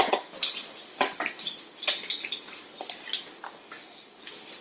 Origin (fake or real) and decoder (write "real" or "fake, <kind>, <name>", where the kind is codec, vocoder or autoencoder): real